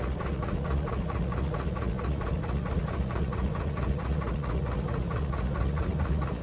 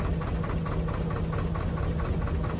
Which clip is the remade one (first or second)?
first